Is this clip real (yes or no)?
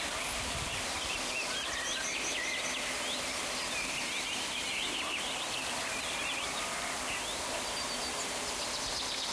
no